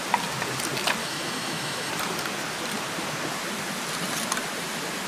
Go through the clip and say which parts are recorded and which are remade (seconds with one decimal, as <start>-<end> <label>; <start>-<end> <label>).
0.0-1.0 recorded; 1.0-1.9 remade; 1.9-5.1 recorded